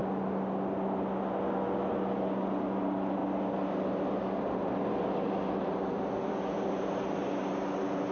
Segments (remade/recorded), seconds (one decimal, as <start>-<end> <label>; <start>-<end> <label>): 0.0-8.1 recorded